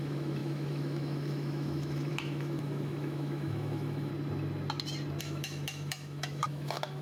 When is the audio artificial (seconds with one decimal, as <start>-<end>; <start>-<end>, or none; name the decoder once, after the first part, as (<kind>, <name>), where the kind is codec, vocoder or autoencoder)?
0.0-4.1 (autoencoder, DAC-VAE); 5.2-7.0